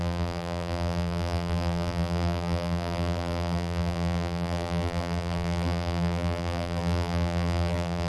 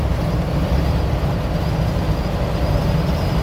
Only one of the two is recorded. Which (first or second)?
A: second